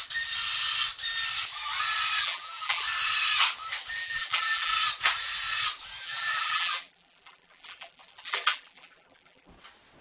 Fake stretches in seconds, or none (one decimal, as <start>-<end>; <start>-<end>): 2.2-2.8; 4.0-4.7; 6.0-9.5